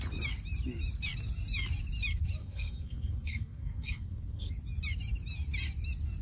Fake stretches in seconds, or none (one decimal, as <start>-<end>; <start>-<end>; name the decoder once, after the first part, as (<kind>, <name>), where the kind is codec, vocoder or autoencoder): 2.4-4.5 (codec, SNAC)